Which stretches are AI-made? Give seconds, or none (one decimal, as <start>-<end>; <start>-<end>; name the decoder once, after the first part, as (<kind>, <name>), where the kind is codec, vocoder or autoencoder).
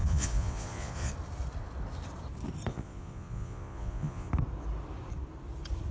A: 0.0-1.1 (vocoder, Vocos); 2.7-4.3